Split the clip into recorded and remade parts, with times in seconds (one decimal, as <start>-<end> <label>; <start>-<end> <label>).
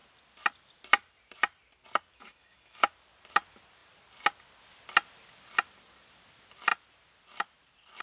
0.0-2.1 recorded; 2.1-2.9 remade; 2.9-8.0 recorded